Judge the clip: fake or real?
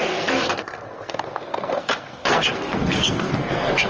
fake